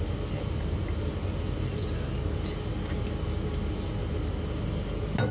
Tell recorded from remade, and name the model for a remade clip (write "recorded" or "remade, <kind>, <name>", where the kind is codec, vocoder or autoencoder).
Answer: recorded